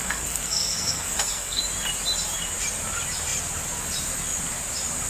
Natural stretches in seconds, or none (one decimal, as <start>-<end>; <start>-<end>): 1.6-5.1